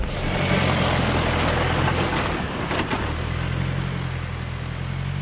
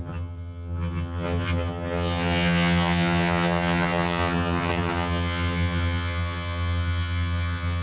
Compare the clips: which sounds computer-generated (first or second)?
second